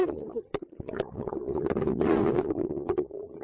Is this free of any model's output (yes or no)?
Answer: no